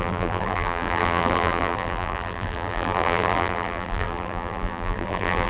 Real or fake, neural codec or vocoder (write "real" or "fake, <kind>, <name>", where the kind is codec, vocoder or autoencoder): fake, vocoder, BigVGAN v2